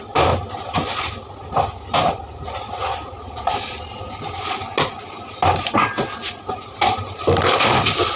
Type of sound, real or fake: real